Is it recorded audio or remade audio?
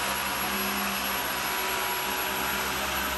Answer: recorded